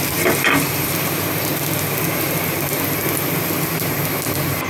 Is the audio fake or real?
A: real